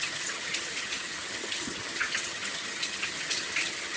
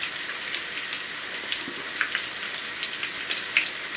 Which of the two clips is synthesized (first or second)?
first